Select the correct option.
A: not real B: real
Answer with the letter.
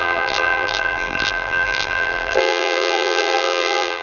A